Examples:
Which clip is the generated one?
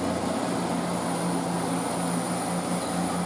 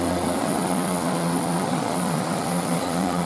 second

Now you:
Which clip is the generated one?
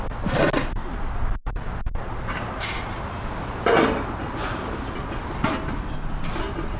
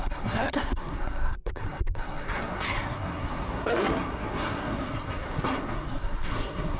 second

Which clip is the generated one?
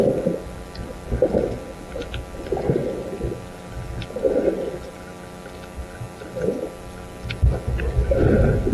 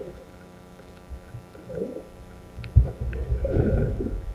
second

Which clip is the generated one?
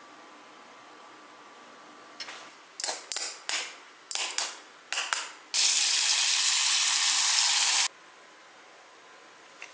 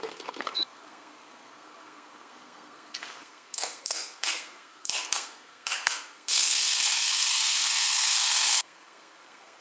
second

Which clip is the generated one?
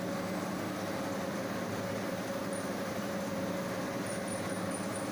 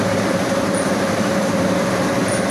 second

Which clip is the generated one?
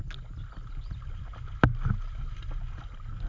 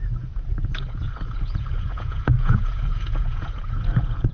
second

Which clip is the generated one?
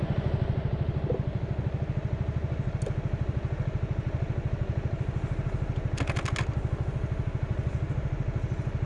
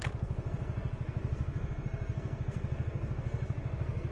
second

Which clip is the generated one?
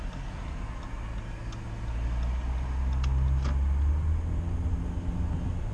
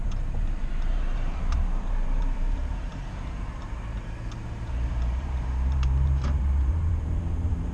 second